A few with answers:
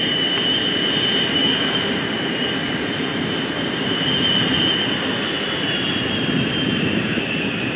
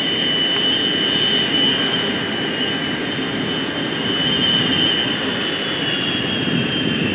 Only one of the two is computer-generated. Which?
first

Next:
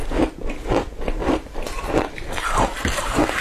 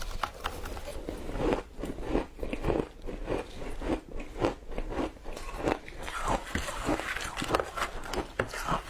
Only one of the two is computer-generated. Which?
first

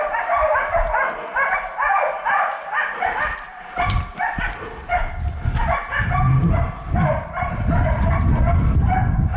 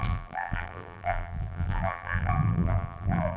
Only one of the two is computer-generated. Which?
second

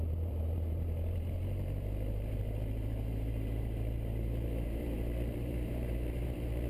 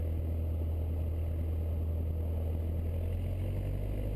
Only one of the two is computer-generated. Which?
first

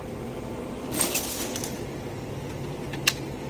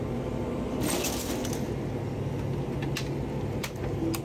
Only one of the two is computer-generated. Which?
first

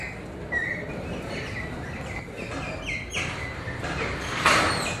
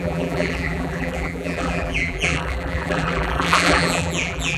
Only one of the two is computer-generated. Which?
second